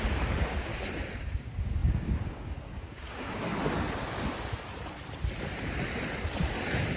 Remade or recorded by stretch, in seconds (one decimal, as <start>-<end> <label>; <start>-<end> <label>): 0.0-0.7 remade; 0.7-1.2 recorded; 1.2-3.5 remade; 3.5-6.6 recorded; 6.6-7.0 remade